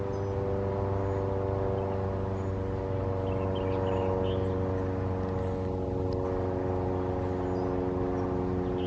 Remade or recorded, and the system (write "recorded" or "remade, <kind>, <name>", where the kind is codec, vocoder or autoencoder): recorded